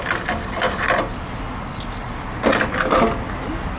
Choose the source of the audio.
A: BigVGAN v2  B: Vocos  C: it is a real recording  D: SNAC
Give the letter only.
C